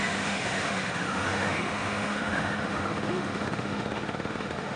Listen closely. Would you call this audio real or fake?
fake